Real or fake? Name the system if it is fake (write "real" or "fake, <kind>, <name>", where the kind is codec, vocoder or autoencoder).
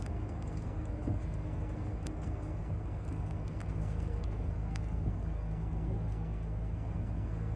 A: fake, codec, SNAC